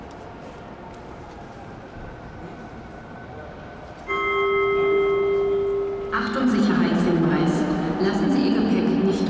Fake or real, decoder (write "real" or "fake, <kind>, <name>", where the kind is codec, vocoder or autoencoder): real